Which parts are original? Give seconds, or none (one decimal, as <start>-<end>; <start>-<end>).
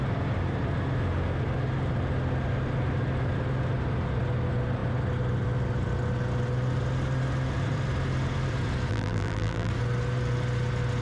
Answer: 0.0-8.9; 9.7-11.0